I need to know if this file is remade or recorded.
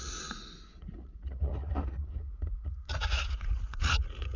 remade